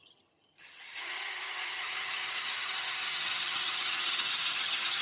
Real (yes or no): no